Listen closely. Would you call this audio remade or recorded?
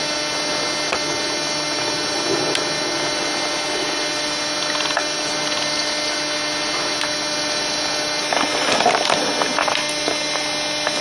recorded